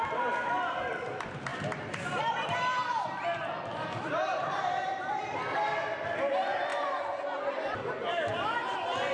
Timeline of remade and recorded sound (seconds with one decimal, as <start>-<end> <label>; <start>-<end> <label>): 0.0-9.1 remade